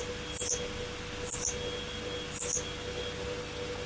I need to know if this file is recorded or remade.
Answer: recorded